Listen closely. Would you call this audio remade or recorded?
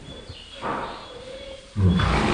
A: recorded